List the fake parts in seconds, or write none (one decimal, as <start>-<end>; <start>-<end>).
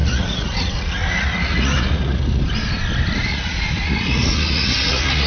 0.0-2.4; 3.3-5.3